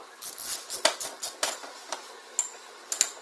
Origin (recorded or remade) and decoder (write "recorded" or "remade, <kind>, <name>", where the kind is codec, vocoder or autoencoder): recorded